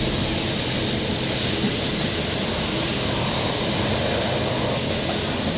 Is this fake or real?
real